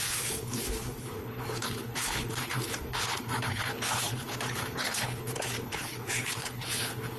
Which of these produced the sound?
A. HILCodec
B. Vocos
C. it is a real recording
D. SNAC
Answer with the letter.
A